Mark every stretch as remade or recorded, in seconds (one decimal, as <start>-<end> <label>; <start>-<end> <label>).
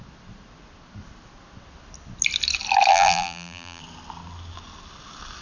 0.0-2.9 recorded; 2.9-3.8 remade; 3.8-5.4 recorded